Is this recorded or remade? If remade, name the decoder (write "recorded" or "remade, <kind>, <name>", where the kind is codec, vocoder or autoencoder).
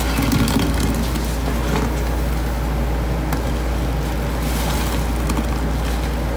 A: recorded